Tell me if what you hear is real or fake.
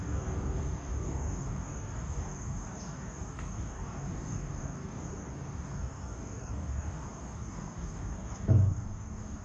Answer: fake